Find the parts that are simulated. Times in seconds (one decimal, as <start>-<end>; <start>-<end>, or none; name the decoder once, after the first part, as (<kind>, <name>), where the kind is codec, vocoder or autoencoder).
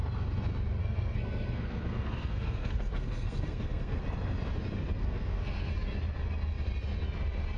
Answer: 0.8-4.0 (codec, SNAC); 5.0-5.7